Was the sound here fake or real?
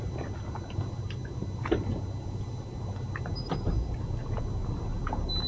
real